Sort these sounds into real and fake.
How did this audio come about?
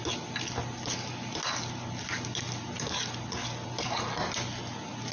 real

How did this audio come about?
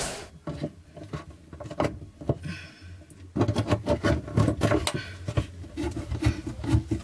real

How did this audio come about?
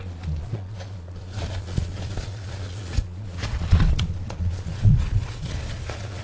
fake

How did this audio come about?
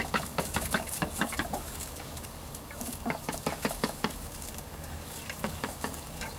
fake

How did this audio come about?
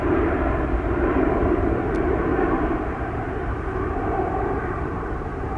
fake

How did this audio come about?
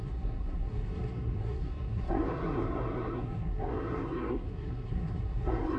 fake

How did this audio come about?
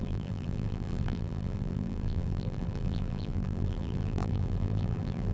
fake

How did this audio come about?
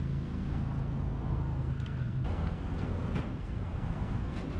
fake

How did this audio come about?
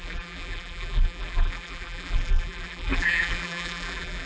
fake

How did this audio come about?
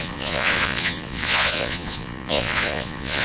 fake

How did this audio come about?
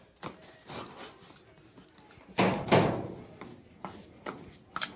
real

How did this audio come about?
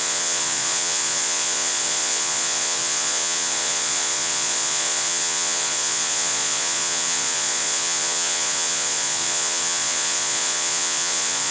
fake